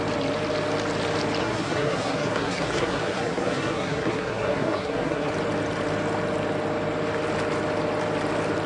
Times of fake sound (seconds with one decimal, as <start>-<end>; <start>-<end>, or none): 1.4-5.3